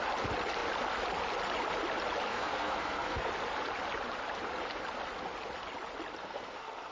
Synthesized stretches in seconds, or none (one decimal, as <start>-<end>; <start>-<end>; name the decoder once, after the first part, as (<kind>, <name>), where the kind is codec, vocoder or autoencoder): 2.3-3.3 (codec, SNAC); 6.2-6.9